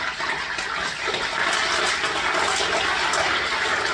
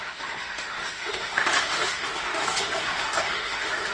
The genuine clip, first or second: first